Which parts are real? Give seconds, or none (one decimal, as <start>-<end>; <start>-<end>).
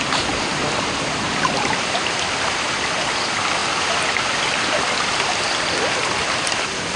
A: none